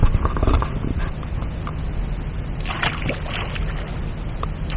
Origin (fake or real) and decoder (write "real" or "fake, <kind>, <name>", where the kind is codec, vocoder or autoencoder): real